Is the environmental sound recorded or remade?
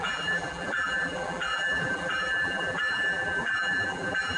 remade